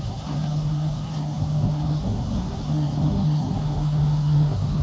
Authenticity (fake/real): fake